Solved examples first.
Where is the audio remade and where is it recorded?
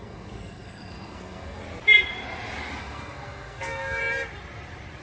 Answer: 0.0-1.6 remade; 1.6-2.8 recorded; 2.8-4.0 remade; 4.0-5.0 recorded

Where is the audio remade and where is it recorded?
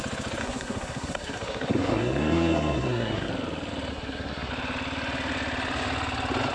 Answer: 0.0-0.4 recorded; 0.4-3.3 remade; 3.3-3.9 recorded; 3.9-4.5 remade; 4.5-6.5 recorded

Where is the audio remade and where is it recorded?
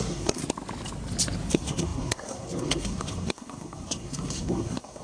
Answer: 0.0-0.4 remade; 0.4-1.5 recorded; 1.5-5.0 remade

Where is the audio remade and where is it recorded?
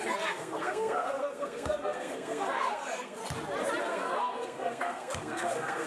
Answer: 0.0-3.2 remade; 3.2-3.8 recorded; 3.8-5.9 remade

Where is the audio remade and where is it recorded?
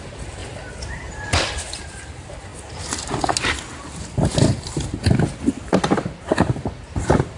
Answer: 0.0-7.4 recorded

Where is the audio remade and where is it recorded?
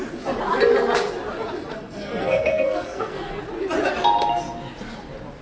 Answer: 0.0-1.7 recorded; 1.7-3.4 remade; 3.4-5.4 recorded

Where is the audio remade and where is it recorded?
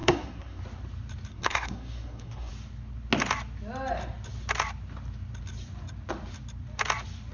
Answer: 0.0-0.6 remade; 0.6-1.3 recorded; 1.3-2.5 remade; 2.5-7.3 recorded